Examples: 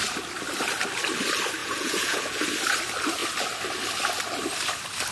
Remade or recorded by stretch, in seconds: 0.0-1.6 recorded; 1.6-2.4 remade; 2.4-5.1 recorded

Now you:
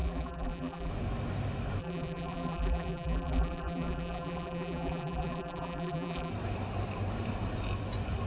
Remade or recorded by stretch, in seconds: 0.0-0.9 remade; 0.9-1.8 recorded; 1.8-6.3 remade; 6.3-8.3 recorded

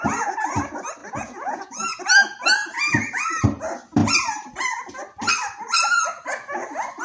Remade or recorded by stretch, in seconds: 0.0-1.0 recorded; 1.0-2.0 remade; 2.0-7.0 recorded